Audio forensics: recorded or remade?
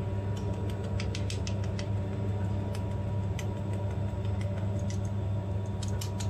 recorded